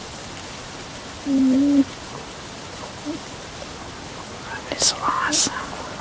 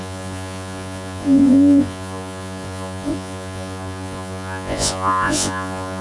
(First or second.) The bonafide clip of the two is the first